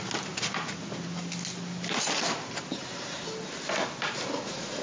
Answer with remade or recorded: recorded